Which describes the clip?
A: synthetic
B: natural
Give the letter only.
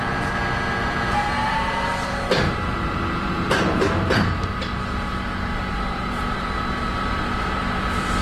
B